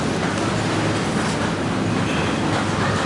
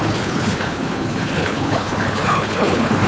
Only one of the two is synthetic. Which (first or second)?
second